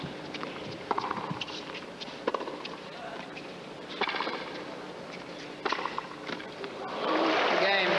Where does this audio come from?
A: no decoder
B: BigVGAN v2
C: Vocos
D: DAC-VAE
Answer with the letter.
B